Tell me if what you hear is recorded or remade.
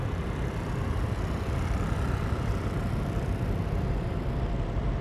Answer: remade